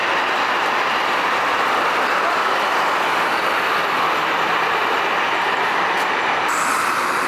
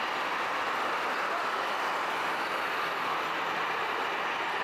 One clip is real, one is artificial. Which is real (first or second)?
second